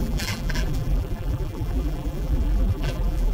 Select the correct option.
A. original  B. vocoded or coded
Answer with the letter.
B